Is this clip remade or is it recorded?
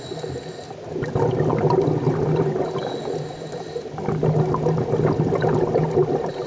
recorded